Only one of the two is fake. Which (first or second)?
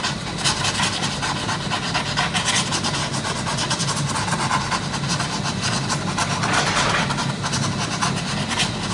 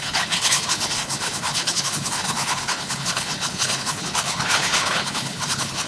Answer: second